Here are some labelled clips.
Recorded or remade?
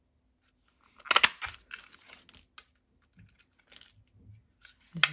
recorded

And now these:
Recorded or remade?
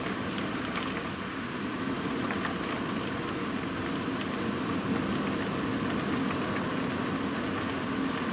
recorded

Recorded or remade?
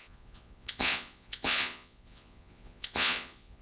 remade